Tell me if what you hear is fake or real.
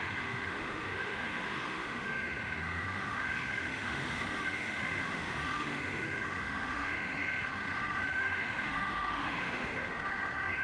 fake